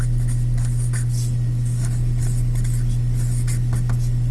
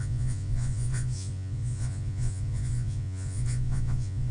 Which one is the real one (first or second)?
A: first